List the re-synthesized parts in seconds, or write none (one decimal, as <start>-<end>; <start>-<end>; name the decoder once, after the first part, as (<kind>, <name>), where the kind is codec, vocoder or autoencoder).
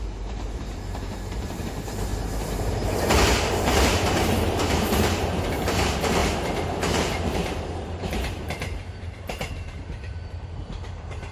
0.0-2.1 (vocoder, BigVGAN v2); 2.6-11.3